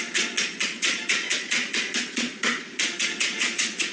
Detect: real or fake fake